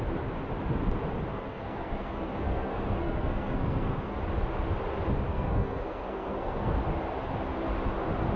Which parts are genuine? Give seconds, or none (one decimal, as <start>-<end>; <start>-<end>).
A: 0.0-1.3; 4.2-5.3; 6.8-8.4